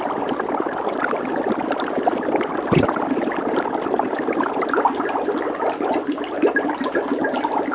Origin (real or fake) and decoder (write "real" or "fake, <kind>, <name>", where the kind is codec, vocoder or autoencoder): real